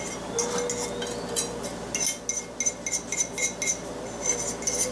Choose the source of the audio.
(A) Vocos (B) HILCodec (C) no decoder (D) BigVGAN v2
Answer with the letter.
C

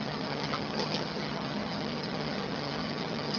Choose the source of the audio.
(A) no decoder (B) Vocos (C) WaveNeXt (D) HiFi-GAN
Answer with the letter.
D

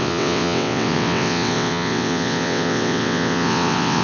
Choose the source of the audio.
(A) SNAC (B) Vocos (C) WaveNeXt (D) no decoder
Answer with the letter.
C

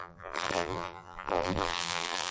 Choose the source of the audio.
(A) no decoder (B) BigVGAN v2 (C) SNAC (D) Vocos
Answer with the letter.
B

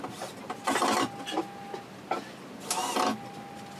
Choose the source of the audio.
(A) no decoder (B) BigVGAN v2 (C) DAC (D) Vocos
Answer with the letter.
A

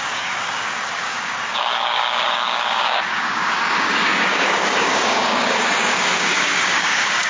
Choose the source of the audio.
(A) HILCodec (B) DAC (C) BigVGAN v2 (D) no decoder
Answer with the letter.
B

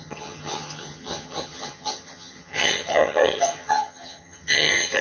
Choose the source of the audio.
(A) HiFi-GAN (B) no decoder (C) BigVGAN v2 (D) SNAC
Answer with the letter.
A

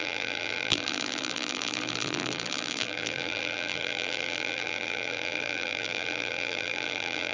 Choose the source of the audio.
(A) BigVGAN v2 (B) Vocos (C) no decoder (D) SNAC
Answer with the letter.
A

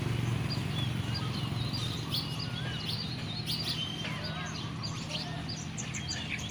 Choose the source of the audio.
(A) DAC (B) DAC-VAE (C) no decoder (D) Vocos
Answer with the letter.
C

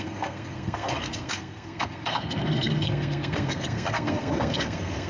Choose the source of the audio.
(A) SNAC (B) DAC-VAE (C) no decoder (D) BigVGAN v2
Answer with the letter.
A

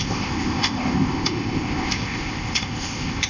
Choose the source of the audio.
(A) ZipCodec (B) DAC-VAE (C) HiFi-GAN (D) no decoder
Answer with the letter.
A